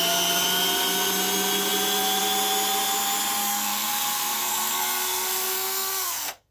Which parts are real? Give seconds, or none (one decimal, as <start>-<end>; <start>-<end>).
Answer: 0.0-3.4